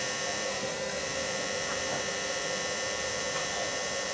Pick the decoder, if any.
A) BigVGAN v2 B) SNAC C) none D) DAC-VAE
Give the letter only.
A